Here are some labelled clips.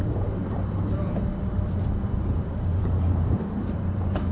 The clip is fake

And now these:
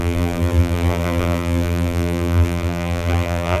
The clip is fake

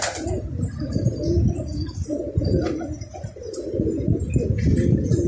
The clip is real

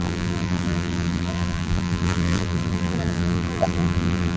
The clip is fake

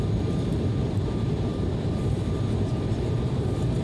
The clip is fake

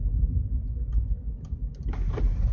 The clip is real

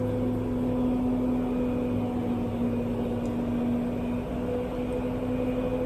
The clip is real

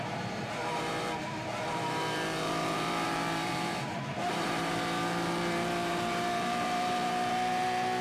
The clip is fake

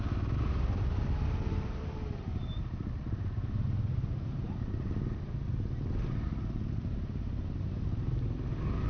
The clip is real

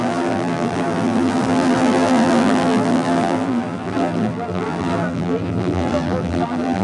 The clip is fake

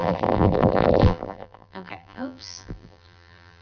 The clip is fake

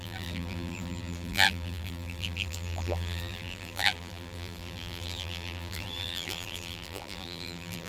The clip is fake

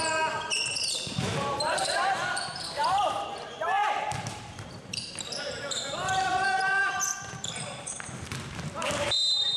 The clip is fake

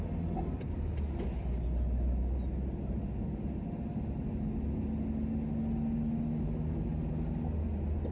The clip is real